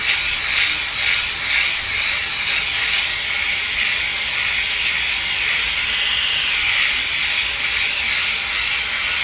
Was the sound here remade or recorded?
recorded